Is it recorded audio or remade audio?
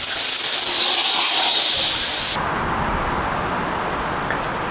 recorded